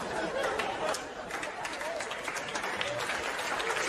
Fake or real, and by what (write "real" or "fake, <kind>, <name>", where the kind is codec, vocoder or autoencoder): fake, vocoder, BigVGAN v2